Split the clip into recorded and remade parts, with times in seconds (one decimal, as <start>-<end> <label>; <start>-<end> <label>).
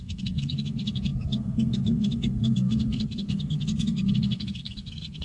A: 0.0-5.2 remade